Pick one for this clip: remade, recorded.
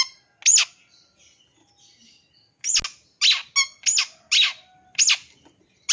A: recorded